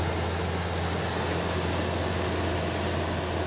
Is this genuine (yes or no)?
yes